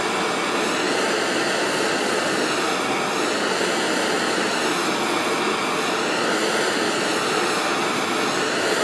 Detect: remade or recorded recorded